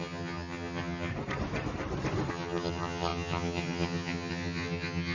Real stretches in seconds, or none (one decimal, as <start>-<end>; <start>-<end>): 1.1-2.3